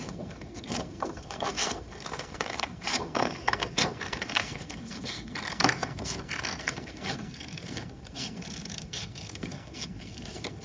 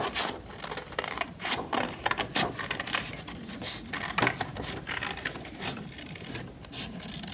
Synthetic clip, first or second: first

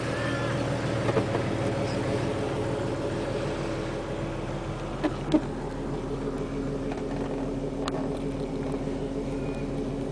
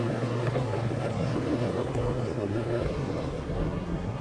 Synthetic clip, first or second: second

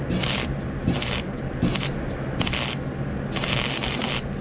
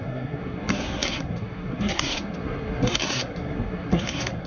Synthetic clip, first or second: second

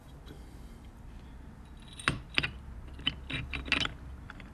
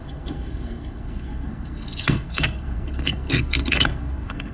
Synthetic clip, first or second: second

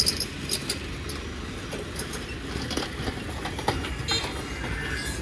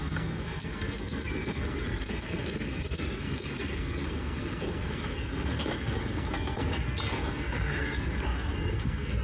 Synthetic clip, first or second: second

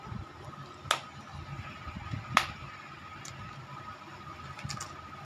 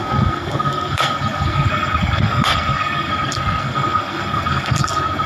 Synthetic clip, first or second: second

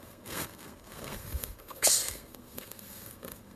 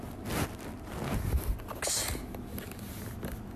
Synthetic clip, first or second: first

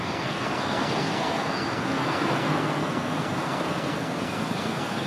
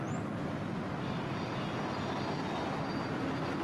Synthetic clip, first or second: first